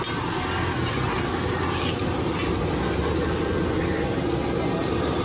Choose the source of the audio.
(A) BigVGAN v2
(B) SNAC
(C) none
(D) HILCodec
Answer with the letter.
C